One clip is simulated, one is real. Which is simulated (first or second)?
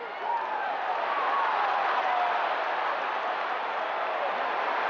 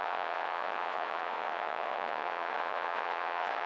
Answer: second